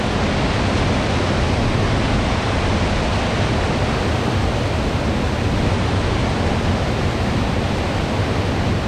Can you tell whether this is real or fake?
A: real